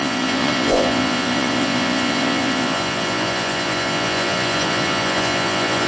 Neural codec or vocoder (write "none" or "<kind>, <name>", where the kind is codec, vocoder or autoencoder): vocoder, Vocos